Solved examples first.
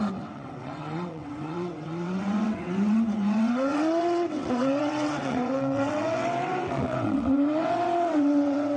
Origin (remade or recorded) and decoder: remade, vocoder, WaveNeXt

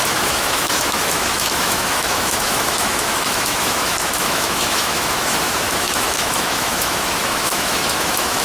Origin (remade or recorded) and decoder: remade, autoencoder, DAC-VAE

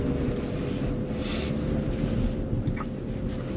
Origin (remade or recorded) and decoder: recorded